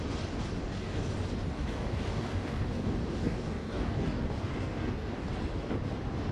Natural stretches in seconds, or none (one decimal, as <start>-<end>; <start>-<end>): 0.0-0.6; 1.1-1.5; 5.3-6.3